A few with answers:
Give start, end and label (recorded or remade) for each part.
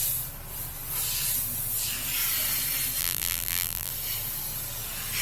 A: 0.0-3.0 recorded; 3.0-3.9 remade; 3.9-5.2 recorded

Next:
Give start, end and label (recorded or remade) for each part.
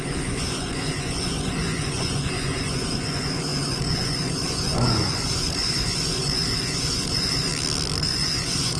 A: 0.0-7.5 remade; 7.5-8.0 recorded; 8.0-8.8 remade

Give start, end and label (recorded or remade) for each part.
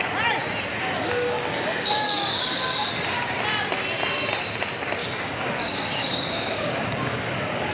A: 0.0-0.7 recorded; 0.7-2.9 remade; 2.9-5.0 recorded; 5.0-7.7 remade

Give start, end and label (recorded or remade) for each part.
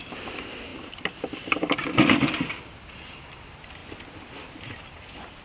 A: 0.0-0.7 recorded; 0.7-2.3 remade; 2.3-5.4 recorded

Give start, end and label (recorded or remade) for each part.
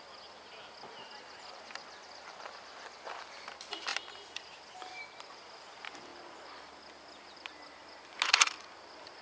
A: 0.0-9.2 recorded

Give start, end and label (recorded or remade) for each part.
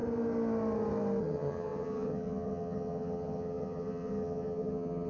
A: 0.0-1.2 recorded; 1.2-5.1 remade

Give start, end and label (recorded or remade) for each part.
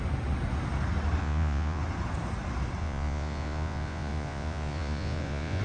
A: 0.0-1.2 recorded; 1.2-1.8 remade; 1.8-2.8 recorded; 2.8-5.6 remade